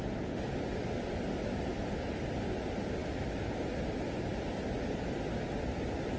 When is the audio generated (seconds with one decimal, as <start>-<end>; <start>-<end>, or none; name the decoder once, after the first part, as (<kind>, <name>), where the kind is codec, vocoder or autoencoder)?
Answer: none